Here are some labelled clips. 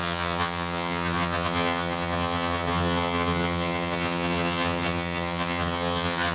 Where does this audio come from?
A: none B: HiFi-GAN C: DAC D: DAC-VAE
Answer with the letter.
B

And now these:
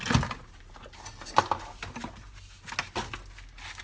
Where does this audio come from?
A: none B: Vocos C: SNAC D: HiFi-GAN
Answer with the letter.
A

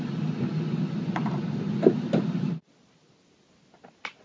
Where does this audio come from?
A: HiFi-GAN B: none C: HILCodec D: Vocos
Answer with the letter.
B